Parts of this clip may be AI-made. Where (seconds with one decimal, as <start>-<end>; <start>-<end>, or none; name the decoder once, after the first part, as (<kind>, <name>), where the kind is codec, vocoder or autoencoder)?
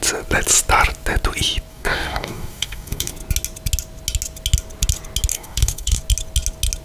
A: 1.7-3.1 (codec, DAC); 5.3-6.0